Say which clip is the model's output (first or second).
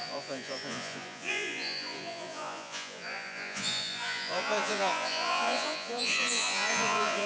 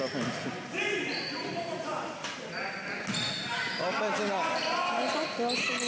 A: first